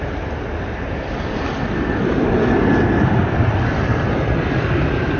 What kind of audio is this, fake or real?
real